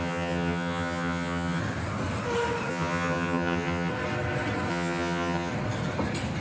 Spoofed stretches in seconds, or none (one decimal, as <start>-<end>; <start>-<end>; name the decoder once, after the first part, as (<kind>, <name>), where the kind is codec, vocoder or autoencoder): 0.0-1.6 (vocoder, HiFi-GAN); 2.7-3.9; 4.7-5.5